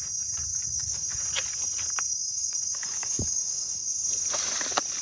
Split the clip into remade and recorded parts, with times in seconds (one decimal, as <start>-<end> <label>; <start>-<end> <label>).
0.0-0.5 recorded; 0.5-1.1 remade; 1.1-2.1 recorded; 2.1-3.9 remade; 3.9-5.0 recorded